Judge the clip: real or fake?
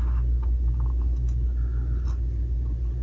real